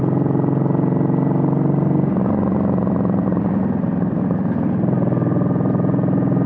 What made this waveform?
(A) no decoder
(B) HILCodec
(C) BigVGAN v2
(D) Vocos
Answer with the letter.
A